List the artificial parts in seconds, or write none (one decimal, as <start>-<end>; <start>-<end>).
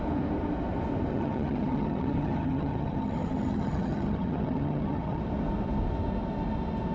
1.1-5.2